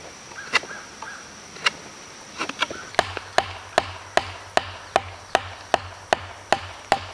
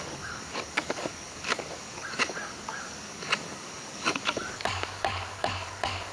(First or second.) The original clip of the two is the first